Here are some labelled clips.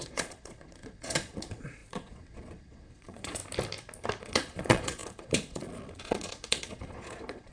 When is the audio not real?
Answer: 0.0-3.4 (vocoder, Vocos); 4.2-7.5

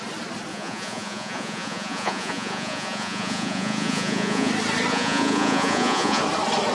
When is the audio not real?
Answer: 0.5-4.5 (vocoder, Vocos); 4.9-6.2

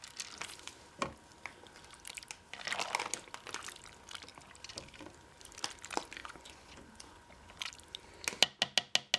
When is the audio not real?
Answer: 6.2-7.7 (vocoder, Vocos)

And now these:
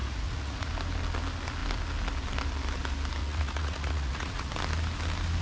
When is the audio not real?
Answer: 0.0-0.7 (vocoder, Vocos); 3.2-4.5

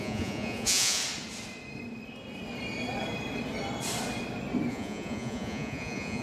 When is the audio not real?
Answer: 0.0-1.0 (vocoder, Vocos); 4.7-6.2

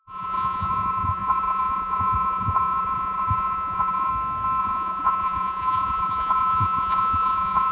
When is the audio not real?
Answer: 0.0-4.1 (vocoder, Vocos); 4.6-7.7

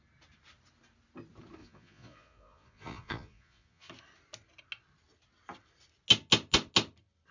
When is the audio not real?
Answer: 1.6-3.9 (vocoder, Vocos)

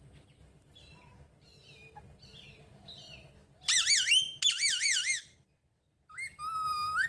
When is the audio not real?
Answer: none